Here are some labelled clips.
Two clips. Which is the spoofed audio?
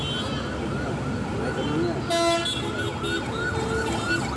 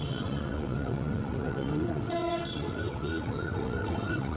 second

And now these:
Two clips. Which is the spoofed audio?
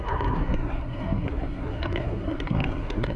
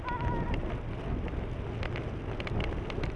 first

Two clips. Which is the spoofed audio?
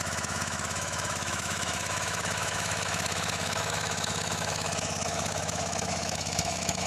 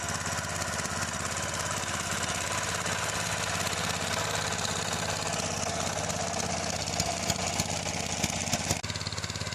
first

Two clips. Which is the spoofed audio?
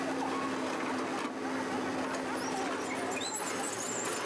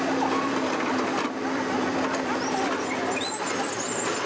second